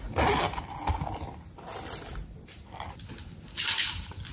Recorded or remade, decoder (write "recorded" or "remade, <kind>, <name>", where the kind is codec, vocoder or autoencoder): recorded